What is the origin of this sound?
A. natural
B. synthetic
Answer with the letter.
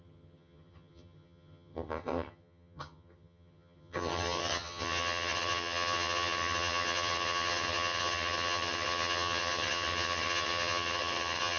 B